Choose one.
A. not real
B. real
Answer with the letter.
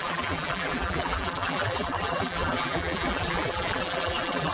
A